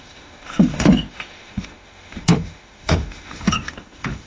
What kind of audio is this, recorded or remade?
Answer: remade